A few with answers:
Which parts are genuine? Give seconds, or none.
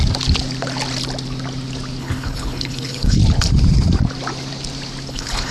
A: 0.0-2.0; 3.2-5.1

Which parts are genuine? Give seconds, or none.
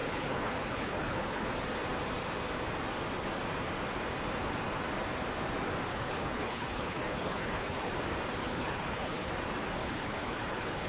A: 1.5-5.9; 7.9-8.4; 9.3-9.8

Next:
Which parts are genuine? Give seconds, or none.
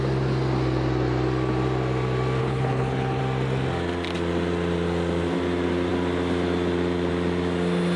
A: 0.0-2.4; 3.2-8.0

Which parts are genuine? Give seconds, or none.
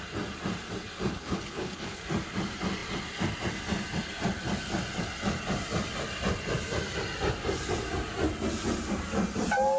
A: 0.0-1.1; 2.0-9.8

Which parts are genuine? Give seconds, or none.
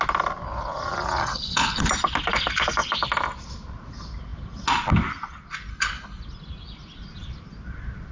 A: 0.0-1.2; 1.8-5.7; 6.2-8.1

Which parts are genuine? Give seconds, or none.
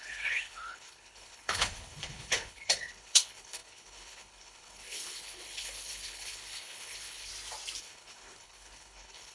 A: 7.3-7.8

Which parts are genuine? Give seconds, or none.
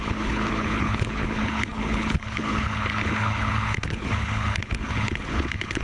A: none